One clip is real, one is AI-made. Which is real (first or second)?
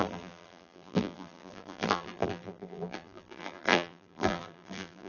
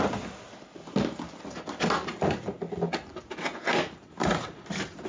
second